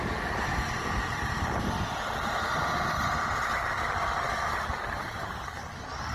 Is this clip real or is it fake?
real